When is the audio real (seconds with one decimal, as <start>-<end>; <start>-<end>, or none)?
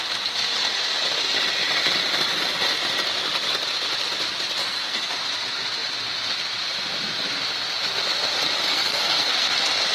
0.0-4.6; 5.1-8.7; 9.5-9.9